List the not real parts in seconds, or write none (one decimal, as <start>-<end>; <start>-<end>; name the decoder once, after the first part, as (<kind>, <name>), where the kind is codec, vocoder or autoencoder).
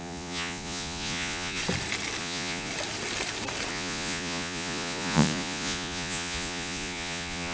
0.0-1.6 (vocoder, Vocos); 2.2-2.7; 3.7-7.5